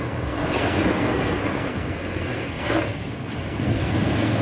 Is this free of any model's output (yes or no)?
no